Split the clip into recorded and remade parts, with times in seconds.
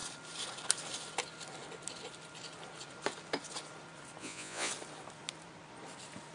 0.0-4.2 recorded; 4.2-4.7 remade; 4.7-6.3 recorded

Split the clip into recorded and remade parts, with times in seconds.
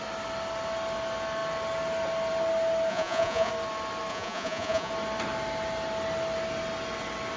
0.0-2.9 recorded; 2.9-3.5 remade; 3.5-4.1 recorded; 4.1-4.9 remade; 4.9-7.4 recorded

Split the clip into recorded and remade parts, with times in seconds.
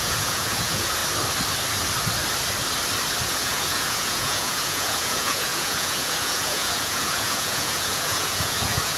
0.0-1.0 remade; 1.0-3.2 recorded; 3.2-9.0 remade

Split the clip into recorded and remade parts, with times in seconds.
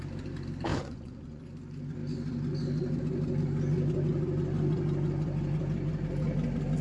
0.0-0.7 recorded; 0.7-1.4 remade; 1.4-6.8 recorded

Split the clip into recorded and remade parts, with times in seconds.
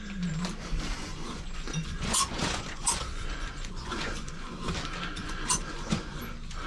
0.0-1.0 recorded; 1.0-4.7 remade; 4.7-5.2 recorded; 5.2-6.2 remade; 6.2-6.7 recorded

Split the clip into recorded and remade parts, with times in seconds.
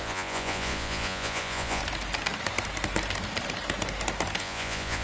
0.0-1.8 remade; 1.8-4.4 recorded; 4.4-5.0 remade